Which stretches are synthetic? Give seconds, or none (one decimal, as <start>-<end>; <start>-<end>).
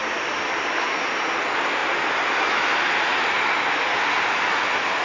none